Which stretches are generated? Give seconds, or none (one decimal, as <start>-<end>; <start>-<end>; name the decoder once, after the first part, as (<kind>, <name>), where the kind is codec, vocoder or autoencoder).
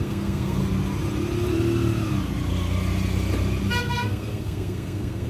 0.0-0.6 (codec, SNAC); 3.8-5.3